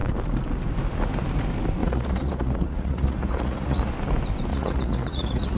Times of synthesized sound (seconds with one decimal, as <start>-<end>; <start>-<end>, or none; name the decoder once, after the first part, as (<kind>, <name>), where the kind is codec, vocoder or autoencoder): 1.8-3.9 (vocoder, Vocos); 4.5-5.6

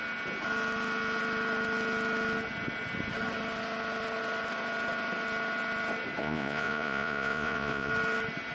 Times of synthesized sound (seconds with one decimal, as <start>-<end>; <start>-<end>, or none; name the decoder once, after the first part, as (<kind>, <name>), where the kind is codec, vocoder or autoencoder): 6.2-7.9 (vocoder, Vocos)